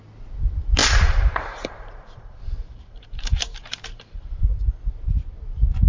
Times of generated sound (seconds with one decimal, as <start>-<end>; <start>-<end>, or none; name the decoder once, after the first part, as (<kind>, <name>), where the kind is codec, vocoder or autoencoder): 0.8-4.3 (vocoder, BigVGAN v2)